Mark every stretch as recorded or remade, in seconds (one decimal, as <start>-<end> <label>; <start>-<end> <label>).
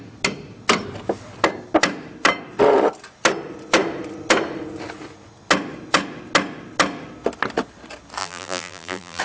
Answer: 0.0-8.2 recorded; 8.2-9.2 remade